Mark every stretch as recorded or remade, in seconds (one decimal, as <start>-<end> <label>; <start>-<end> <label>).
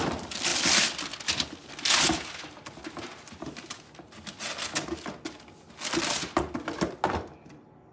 0.0-7.9 recorded